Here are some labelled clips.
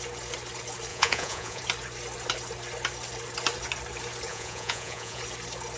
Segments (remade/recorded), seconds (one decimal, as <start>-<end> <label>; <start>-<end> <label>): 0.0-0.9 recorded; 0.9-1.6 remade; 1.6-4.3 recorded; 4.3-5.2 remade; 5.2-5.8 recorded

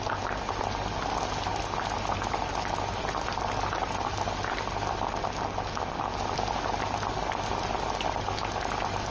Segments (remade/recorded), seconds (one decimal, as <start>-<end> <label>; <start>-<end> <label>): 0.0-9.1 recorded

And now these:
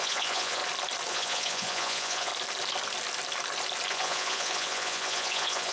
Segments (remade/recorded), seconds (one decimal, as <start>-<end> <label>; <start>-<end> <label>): 0.0-0.6 remade; 0.6-1.1 recorded; 1.1-2.3 remade; 2.3-3.9 recorded; 3.9-5.7 remade